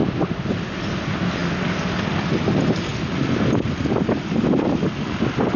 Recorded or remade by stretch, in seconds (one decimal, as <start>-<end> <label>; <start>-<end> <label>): 0.0-5.6 recorded